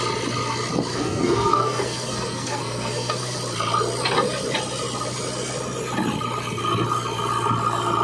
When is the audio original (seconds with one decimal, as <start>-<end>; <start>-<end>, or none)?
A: 0.0-0.9; 3.4-8.0